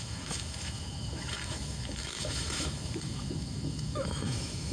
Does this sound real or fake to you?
fake